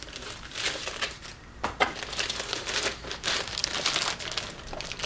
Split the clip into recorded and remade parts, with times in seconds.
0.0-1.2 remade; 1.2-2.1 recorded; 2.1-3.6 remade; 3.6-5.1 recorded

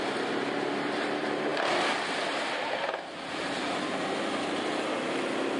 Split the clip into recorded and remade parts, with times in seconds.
0.0-5.6 recorded